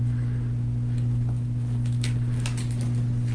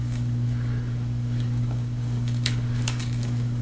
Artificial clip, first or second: second